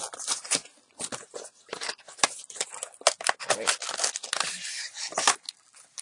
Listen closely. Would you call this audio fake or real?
real